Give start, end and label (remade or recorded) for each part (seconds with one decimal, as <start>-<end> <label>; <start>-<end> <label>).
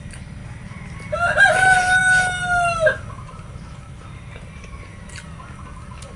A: 0.0-6.2 recorded